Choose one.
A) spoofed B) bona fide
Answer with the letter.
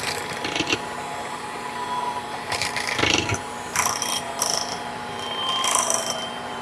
A